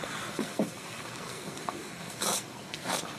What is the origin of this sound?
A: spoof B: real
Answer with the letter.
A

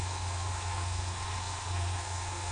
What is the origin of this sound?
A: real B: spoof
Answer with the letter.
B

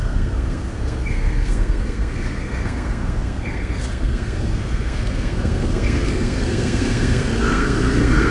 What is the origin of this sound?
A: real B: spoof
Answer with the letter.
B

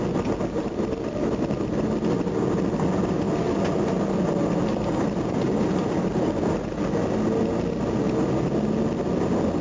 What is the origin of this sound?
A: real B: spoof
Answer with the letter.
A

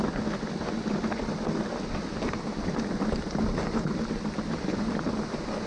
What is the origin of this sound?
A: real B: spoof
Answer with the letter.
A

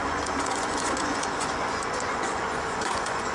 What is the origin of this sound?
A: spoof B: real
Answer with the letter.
A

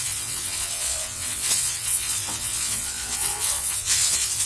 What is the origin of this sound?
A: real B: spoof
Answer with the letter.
B